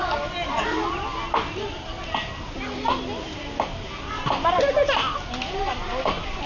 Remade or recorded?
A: recorded